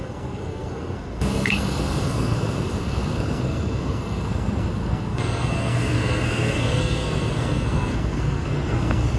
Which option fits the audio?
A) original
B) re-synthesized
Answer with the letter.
B